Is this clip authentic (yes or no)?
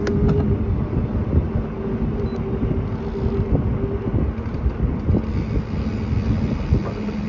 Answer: yes